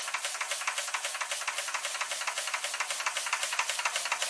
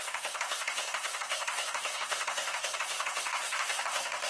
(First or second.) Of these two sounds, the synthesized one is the second